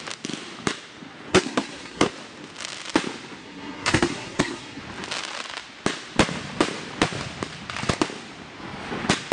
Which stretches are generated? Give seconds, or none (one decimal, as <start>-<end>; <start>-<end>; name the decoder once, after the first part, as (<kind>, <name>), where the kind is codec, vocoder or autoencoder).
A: 1.3-2.1 (codec, SNAC); 3.4-4.8